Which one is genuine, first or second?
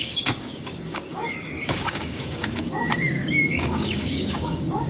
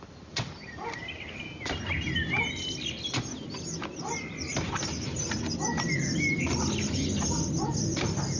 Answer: second